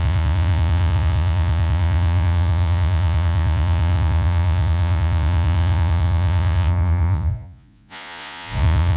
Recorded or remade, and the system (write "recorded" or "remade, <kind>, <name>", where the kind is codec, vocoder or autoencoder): remade, vocoder, Vocos